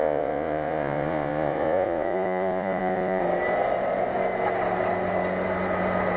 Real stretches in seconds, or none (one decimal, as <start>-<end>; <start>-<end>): 3.2-6.2